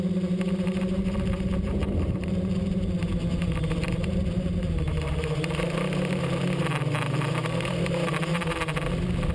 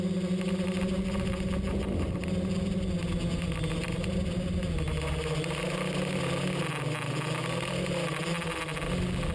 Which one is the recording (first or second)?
second